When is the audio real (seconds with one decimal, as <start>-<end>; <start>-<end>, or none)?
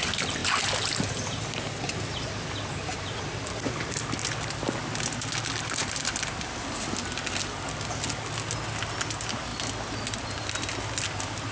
0.0-11.5